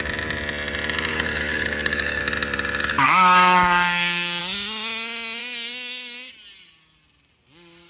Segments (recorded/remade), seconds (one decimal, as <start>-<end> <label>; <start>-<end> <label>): 0.0-1.1 recorded; 1.1-2.2 remade; 2.2-2.8 recorded; 2.8-4.4 remade; 4.4-5.4 recorded; 5.4-6.3 remade; 6.3-7.9 recorded